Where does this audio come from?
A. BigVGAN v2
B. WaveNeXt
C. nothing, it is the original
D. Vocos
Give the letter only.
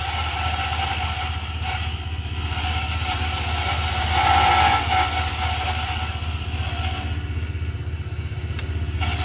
C